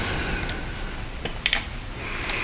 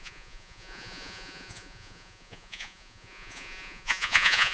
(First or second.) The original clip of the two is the first